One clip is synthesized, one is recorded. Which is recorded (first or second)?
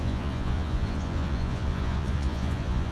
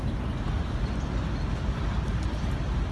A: second